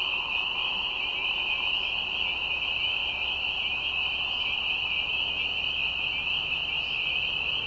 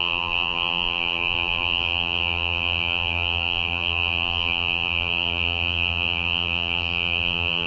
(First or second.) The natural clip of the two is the first